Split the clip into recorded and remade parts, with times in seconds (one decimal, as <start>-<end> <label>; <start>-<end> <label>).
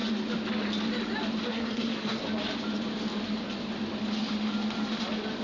0.0-1.5 recorded; 1.5-2.2 remade; 2.2-5.4 recorded